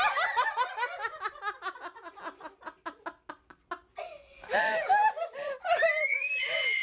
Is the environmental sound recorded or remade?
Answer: recorded